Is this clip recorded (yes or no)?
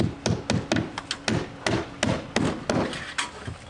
yes